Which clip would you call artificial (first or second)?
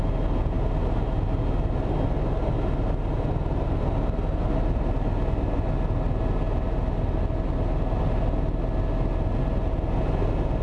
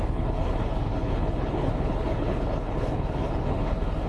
second